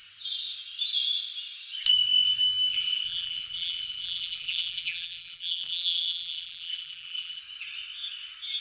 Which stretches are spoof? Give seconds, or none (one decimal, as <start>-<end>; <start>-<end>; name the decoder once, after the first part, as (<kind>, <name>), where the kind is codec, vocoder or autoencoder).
2.7-7.4 (vocoder, BigVGAN v2)

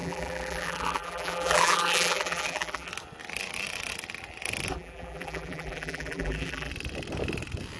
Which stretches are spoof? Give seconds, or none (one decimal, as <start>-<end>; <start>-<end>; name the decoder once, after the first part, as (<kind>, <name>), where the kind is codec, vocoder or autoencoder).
0.0-2.9 (vocoder, BigVGAN v2); 4.7-6.7

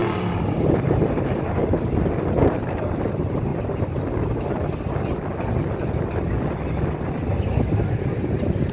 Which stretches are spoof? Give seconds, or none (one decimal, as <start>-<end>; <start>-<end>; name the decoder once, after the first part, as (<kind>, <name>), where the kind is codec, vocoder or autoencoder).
1.1-1.6 (vocoder, BigVGAN v2); 2.5-3.5; 7.7-8.7

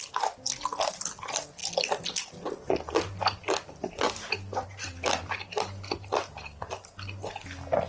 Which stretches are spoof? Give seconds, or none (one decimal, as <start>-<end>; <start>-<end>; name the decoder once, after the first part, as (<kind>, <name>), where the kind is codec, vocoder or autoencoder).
none